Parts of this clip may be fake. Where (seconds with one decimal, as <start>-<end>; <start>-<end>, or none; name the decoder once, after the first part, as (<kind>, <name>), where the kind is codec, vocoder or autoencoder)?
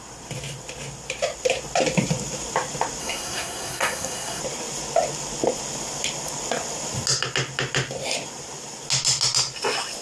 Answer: 3.0-4.4 (codec, SNAC)